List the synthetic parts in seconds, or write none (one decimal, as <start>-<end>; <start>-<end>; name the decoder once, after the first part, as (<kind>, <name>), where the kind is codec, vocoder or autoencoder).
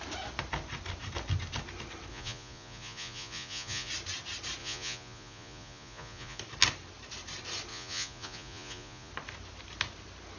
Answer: 2.1-3.9 (vocoder, Vocos); 4.6-6.4; 7.7-9.1